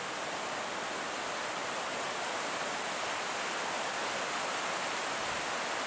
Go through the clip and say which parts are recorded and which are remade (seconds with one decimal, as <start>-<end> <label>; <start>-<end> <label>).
0.0-5.9 recorded